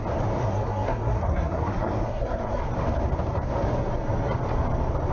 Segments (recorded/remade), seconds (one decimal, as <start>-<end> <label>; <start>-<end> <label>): 0.0-0.4 recorded; 0.4-2.6 remade; 2.6-5.1 recorded